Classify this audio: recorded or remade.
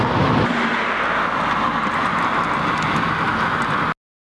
recorded